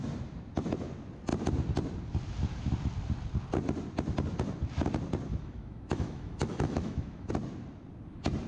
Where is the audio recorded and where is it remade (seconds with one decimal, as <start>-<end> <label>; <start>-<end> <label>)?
0.0-5.3 recorded; 5.3-7.3 remade; 7.3-8.5 recorded

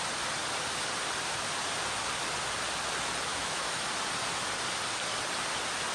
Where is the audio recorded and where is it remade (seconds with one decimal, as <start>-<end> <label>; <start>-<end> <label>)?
0.0-3.3 recorded; 3.3-3.9 remade; 3.9-5.9 recorded

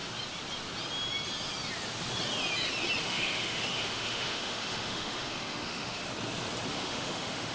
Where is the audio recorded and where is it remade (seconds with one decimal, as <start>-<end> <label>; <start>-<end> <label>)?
0.0-3.0 recorded; 3.0-6.0 remade; 6.0-6.7 recorded; 6.7-7.5 remade

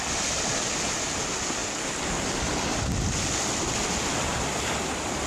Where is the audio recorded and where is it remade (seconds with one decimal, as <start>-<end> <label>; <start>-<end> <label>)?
0.0-5.3 recorded

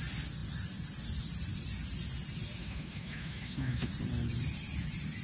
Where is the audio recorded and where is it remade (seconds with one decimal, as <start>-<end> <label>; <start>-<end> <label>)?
0.0-2.6 recorded; 2.6-3.9 remade; 3.9-5.2 recorded

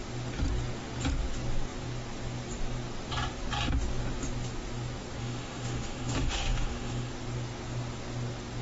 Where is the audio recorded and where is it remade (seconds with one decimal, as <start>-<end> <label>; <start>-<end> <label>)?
0.0-5.2 recorded; 5.2-7.1 remade; 7.1-8.6 recorded